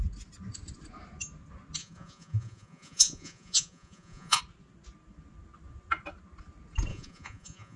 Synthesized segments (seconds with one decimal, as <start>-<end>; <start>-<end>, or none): 1.8-4.4; 6.9-7.8